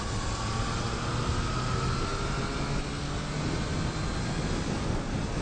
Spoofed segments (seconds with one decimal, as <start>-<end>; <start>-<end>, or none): none